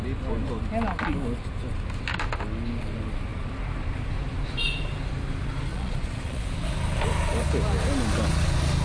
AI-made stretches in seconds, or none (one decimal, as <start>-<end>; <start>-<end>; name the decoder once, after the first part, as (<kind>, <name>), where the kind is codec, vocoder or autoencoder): 5.7-6.4 (vocoder, Vocos)

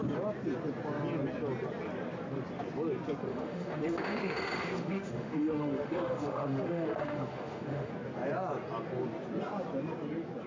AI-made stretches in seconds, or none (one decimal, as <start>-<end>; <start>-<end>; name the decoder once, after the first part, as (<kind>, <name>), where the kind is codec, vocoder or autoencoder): 3.3-7.9 (autoencoder, DAC-VAE)

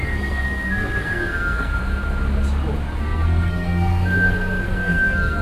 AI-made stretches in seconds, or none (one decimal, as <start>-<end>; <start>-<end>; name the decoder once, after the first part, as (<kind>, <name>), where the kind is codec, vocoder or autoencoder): 0.0-1.7 (codec, SNAC); 3.0-5.4

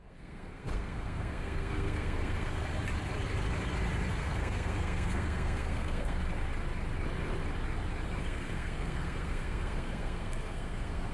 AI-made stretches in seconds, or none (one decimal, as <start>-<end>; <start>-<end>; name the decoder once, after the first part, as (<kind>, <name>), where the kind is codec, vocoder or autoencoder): 0.0-2.7 (codec, SNAC); 4.1-6.2; 8.2-11.1